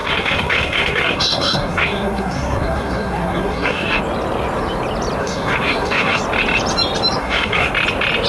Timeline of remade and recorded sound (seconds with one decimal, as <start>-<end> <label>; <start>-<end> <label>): 0.0-4.0 remade; 4.0-5.2 recorded; 5.2-6.2 remade; 6.2-7.2 recorded; 7.2-7.7 remade; 7.7-8.3 recorded